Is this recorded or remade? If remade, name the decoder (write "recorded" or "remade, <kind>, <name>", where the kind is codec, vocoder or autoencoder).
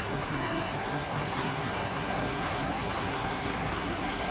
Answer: remade, codec, SNAC